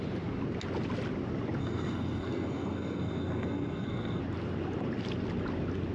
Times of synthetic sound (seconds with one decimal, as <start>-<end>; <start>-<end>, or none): 1.6-4.2